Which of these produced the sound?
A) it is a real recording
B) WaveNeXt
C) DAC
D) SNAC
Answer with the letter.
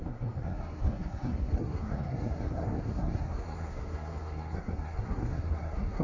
D